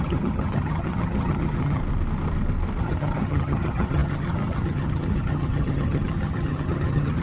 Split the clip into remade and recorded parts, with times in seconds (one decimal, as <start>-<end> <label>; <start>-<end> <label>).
0.0-1.8 remade; 1.8-2.8 recorded; 2.8-7.2 remade